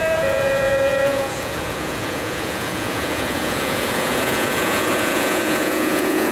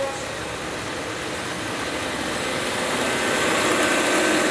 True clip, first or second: second